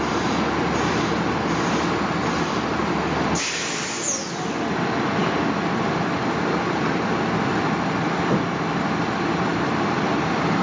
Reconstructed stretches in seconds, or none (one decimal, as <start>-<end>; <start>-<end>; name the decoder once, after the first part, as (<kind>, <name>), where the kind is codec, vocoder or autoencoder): none